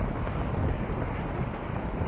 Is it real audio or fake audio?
real